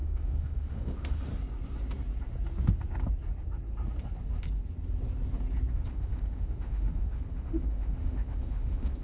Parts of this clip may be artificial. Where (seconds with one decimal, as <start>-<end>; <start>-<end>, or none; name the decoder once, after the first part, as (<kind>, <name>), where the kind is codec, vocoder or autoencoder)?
0.0-1.3 (autoencoder, DAC-VAE); 5.7-9.0